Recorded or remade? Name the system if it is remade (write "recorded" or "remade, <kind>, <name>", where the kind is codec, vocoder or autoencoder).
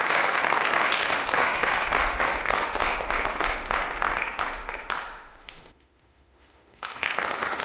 remade, autoencoder, DAC-VAE